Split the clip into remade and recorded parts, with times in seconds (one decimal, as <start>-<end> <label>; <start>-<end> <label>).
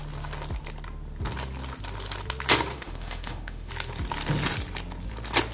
0.0-2.7 recorded; 2.7-3.7 remade; 3.7-5.5 recorded